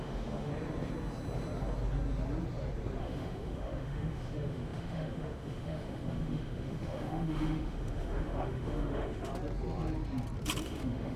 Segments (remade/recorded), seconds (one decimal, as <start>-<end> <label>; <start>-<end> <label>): 0.0-0.5 remade; 0.5-3.0 recorded; 3.0-9.3 remade; 9.3-10.6 recorded; 10.6-11.2 remade